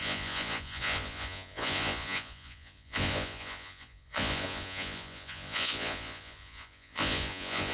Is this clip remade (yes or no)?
yes